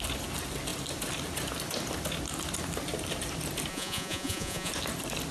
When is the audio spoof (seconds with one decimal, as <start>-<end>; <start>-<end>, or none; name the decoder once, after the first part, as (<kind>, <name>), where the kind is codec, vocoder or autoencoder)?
3.7-4.7 (vocoder, Vocos)